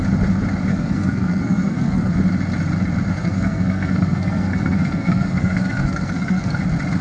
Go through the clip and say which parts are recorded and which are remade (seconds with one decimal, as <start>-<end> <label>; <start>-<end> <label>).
0.0-0.7 recorded; 0.7-2.1 remade; 2.1-3.2 recorded; 3.2-6.6 remade; 6.6-7.0 recorded